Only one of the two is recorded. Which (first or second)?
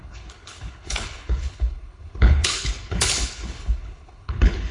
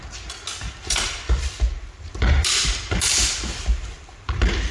second